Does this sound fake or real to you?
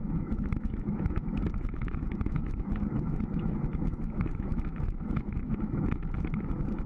fake